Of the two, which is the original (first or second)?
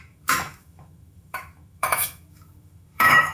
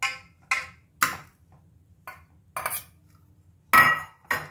second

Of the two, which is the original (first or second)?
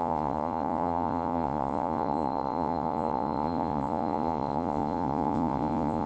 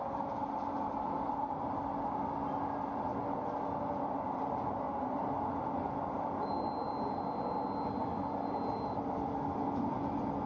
second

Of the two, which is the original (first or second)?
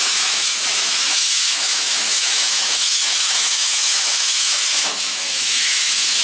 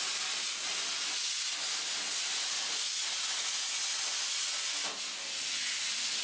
second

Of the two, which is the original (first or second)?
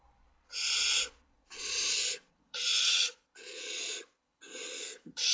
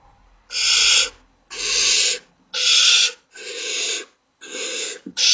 second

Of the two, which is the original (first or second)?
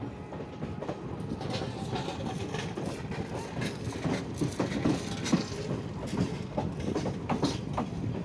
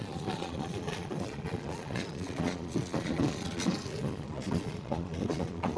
first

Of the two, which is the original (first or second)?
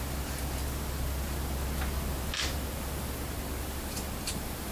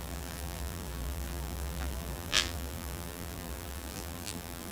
first